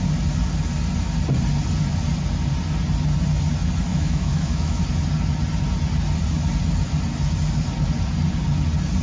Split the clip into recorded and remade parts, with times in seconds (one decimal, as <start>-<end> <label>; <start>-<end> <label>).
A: 0.0-3.9 recorded; 3.9-4.8 remade; 4.8-9.0 recorded